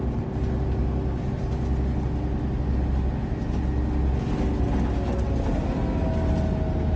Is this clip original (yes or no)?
yes